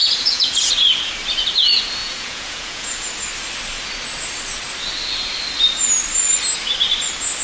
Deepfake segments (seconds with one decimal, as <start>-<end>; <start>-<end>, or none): 0.0-0.7; 2.0-3.1